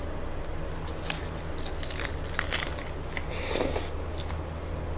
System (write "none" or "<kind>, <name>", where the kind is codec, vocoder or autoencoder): none